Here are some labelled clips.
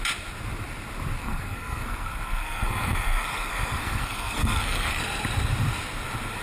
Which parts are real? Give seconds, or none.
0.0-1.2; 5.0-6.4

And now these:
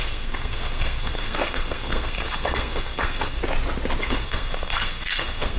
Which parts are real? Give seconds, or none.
3.4-4.0

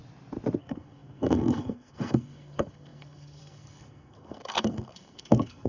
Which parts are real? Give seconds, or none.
0.0-0.6